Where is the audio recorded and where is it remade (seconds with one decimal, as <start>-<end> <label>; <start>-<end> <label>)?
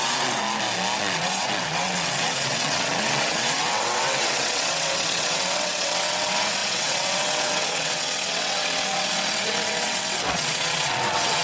0.0-0.4 remade; 0.4-1.0 recorded; 1.0-11.4 remade